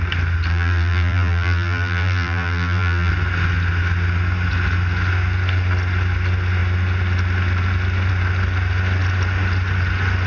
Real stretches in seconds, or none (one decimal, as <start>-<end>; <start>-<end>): 0.0-0.5; 3.1-10.3